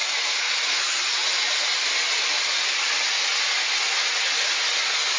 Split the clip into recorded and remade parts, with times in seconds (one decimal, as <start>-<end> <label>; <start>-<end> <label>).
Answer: 0.0-2.9 remade; 2.9-5.2 recorded